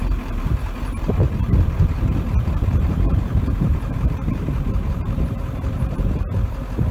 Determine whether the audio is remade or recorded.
remade